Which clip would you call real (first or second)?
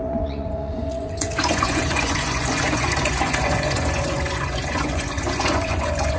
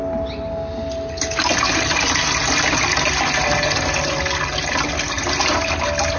second